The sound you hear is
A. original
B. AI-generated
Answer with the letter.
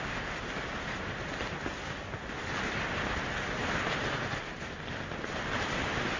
A